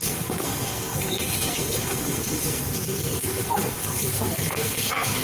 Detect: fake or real fake